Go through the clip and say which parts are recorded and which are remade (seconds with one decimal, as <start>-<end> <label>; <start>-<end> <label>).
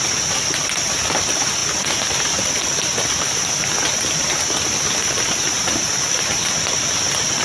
0.0-7.4 recorded